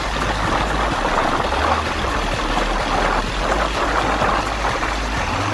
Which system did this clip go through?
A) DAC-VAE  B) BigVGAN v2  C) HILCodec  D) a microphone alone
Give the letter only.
D